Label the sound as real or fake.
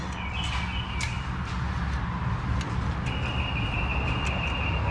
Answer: real